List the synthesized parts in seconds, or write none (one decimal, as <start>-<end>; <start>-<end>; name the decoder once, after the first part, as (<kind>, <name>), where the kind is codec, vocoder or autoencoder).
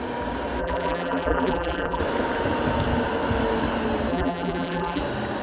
0.6-2.0 (vocoder, BigVGAN v2); 4.1-5.0